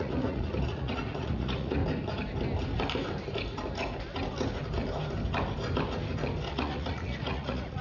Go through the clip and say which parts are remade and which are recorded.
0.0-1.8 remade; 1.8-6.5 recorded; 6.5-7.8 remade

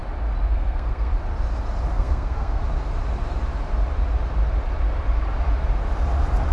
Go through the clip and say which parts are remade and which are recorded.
0.0-0.5 recorded; 0.5-1.1 remade; 1.1-1.9 recorded; 1.9-2.6 remade; 2.6-6.5 recorded

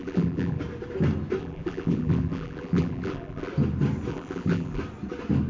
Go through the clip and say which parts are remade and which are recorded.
0.0-0.6 remade; 0.6-1.4 recorded; 1.4-3.5 remade; 3.5-4.1 recorded; 4.1-4.8 remade; 4.8-5.5 recorded

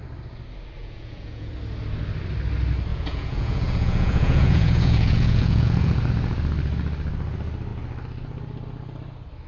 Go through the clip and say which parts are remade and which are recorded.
0.0-0.8 recorded; 0.8-1.5 remade; 1.5-2.9 recorded; 2.9-6.1 remade; 6.1-9.5 recorded

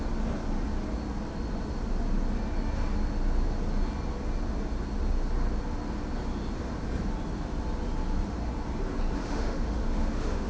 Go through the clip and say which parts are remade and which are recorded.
0.0-9.2 recorded; 9.2-10.5 remade